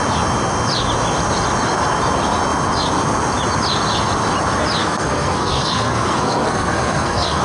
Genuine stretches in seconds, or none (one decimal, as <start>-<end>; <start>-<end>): 0.0-4.8